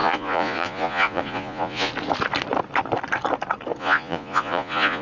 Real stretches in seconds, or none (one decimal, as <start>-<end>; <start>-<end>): 1.9-3.8